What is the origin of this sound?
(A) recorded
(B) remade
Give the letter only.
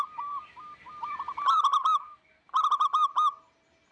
A